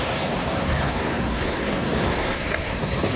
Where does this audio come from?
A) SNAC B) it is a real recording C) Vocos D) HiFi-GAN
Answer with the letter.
A